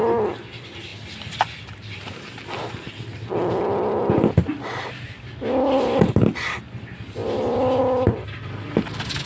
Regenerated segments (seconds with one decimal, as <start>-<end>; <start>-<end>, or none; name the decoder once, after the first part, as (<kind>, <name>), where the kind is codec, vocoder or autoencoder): none